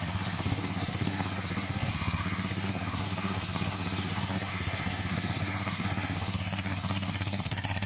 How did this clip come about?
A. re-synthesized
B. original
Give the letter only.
A